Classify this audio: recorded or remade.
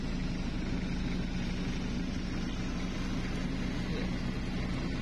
recorded